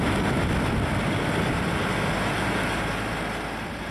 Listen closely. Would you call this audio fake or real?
real